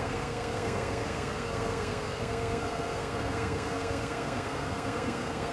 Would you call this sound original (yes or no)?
no